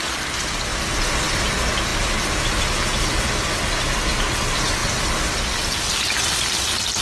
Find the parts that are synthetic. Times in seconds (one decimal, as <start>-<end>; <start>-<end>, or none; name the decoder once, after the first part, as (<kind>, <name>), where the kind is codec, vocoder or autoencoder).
none